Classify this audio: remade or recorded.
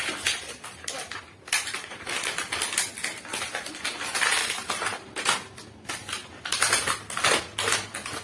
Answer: recorded